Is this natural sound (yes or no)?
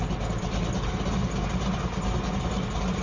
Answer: yes